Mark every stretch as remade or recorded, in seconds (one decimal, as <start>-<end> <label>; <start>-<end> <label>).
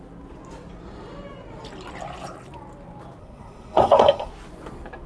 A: 0.0-3.2 recorded; 3.2-4.3 remade; 4.3-5.1 recorded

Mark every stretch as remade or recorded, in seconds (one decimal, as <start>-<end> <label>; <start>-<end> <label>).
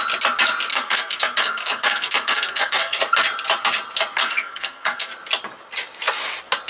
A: 0.0-0.7 recorded; 0.7-3.0 remade; 3.0-4.2 recorded; 4.2-5.1 remade; 5.1-6.7 recorded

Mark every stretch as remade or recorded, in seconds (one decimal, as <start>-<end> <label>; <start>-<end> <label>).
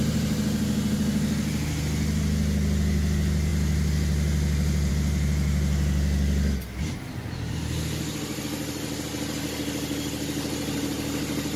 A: 0.0-11.6 recorded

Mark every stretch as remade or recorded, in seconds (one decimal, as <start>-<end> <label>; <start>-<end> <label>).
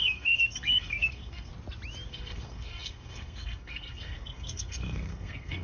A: 0.0-1.5 remade; 1.5-2.1 recorded; 2.1-5.6 remade